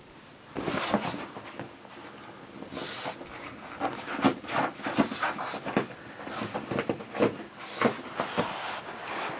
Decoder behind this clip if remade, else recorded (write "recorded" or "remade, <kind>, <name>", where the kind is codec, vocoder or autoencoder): recorded